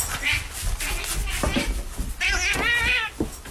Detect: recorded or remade recorded